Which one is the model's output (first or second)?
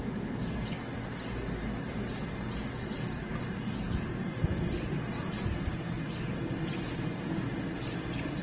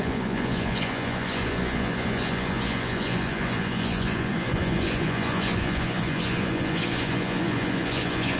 second